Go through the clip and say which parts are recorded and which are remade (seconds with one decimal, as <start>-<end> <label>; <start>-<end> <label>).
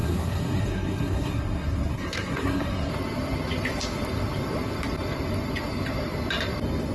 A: 0.0-2.9 remade; 2.9-6.9 recorded